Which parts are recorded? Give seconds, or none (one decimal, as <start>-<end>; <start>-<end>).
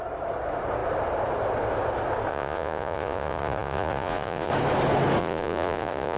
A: 0.0-2.3; 4.5-5.2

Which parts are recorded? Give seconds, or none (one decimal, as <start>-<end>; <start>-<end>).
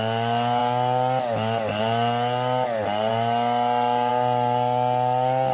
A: 0.0-5.5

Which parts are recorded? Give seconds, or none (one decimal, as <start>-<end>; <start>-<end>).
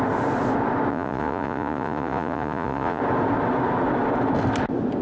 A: 0.0-0.9; 3.0-5.0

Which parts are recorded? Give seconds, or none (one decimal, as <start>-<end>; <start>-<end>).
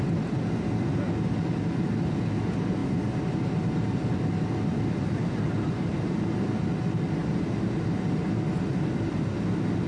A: 0.0-9.9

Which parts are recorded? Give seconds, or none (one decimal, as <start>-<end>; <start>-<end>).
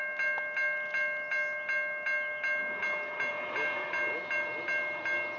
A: 0.0-5.4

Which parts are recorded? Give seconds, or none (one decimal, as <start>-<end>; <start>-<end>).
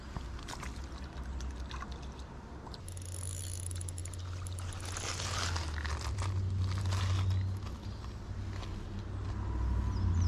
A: 0.0-10.3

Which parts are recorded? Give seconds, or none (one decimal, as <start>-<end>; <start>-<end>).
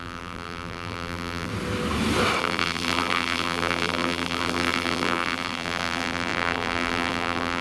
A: 1.5-2.4